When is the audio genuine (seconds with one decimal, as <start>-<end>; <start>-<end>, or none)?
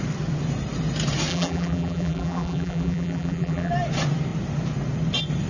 0.0-1.3; 3.7-5.5